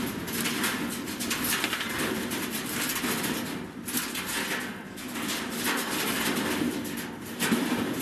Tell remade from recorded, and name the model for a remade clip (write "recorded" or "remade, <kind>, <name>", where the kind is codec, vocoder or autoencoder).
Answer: recorded